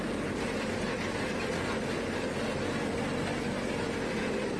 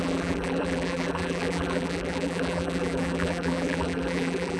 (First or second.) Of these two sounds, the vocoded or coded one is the second